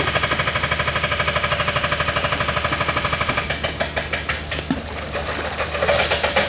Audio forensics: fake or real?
real